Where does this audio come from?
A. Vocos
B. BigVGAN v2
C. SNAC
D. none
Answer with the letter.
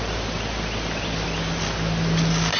D